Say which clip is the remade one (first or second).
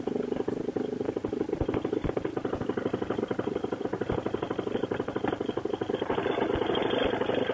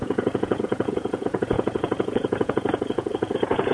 second